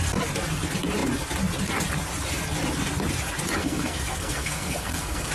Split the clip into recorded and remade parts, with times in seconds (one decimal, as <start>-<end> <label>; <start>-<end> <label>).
0.0-3.6 recorded; 3.6-5.3 remade